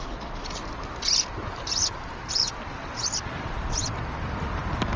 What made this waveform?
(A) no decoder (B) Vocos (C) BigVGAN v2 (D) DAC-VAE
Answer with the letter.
A